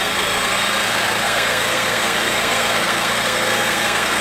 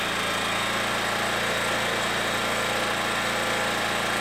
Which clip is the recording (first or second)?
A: second